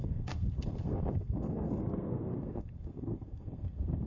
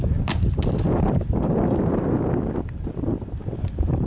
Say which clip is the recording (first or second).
second